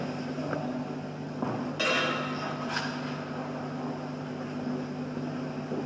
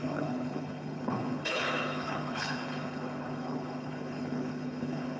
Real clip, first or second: first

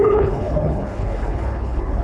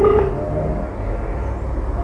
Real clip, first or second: second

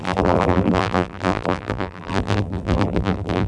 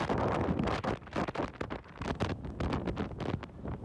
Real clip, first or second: second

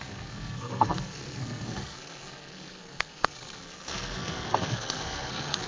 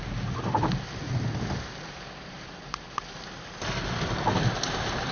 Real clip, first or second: second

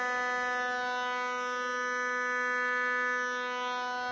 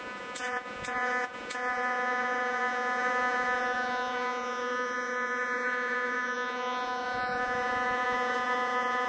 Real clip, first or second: first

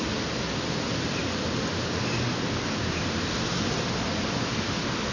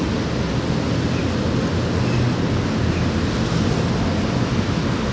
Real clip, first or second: second